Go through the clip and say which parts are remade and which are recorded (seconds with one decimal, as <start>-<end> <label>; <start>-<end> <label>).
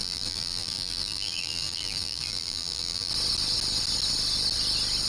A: 0.0-3.1 remade; 3.1-5.1 recorded